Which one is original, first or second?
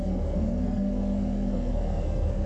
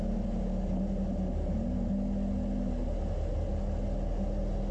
second